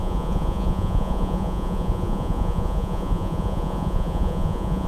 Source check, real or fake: fake